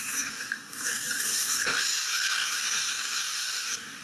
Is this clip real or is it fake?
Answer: fake